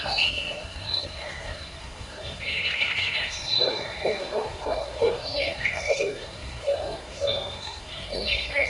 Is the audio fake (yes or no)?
yes